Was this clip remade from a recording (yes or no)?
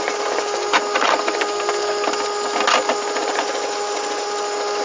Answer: no